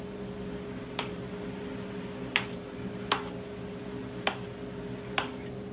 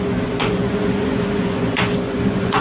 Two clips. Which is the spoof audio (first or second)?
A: second